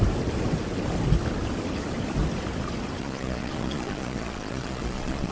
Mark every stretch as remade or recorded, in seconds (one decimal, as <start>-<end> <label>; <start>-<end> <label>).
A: 0.0-3.0 recorded; 3.0-5.3 remade